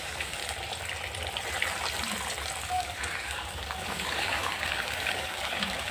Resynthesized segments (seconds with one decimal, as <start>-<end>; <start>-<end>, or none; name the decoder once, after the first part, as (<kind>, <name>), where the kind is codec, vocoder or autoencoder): 0.0-0.4 (codec, DAC); 2.7-5.9